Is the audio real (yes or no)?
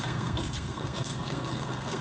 no